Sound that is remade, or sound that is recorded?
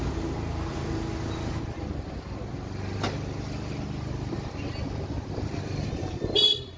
recorded